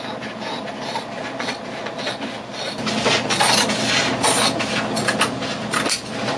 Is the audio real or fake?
real